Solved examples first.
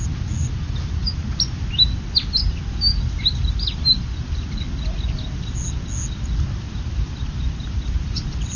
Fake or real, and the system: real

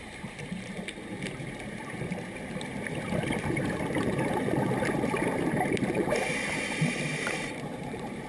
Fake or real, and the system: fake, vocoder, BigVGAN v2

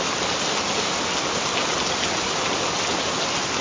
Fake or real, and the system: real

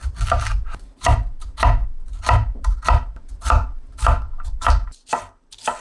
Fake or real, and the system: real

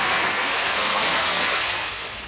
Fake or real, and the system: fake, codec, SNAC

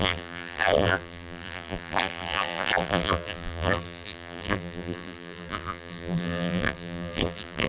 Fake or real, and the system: fake, vocoder, BigVGAN v2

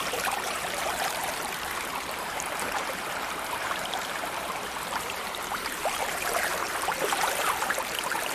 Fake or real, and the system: fake, vocoder, BigVGAN v2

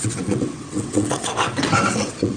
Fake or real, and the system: fake, vocoder, WaveNeXt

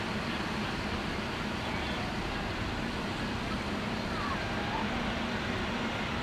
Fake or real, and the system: real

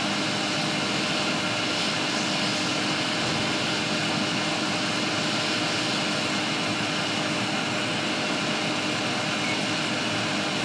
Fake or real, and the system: real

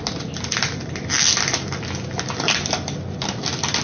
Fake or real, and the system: real